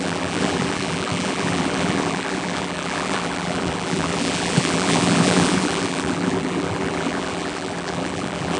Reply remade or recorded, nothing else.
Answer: remade